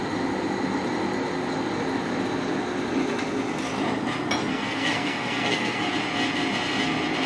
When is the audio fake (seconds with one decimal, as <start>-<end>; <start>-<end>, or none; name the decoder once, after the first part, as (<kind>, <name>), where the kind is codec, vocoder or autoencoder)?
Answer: 4.5-5.9 (codec, SNAC)